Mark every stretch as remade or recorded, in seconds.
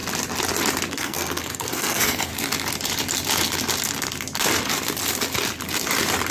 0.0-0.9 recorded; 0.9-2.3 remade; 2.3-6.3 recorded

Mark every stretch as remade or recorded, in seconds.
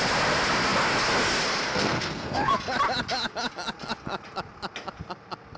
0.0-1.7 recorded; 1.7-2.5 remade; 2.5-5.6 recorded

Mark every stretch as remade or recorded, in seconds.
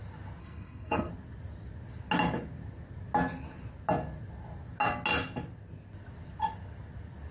0.0-0.4 recorded; 0.4-1.1 remade; 1.1-7.3 recorded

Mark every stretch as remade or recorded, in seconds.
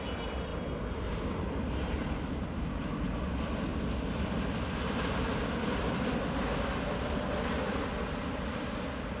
0.0-9.2 recorded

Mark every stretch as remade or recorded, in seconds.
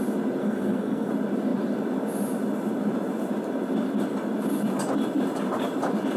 0.0-0.4 recorded; 0.4-1.1 remade; 1.1-6.2 recorded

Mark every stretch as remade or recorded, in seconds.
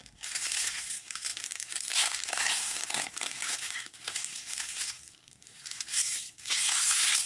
0.0-7.3 remade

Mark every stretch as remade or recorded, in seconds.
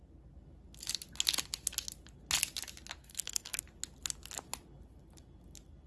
0.0-3.0 recorded; 3.0-3.6 remade; 3.6-5.9 recorded